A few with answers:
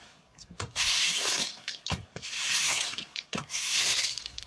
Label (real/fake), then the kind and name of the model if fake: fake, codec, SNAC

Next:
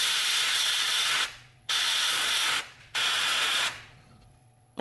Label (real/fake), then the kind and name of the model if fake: fake, vocoder, Vocos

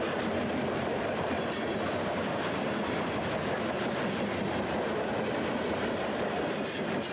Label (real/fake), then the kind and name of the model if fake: real